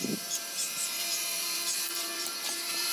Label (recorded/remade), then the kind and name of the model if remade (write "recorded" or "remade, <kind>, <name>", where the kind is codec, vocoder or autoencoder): remade, vocoder, BigVGAN v2